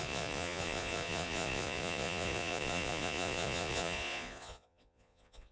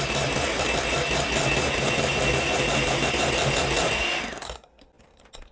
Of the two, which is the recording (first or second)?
second